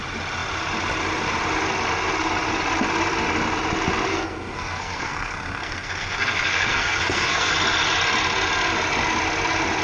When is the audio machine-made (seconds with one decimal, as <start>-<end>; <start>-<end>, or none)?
4.1-7.5